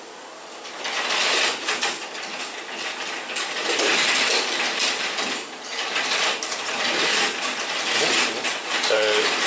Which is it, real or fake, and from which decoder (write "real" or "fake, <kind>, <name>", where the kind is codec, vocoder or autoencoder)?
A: real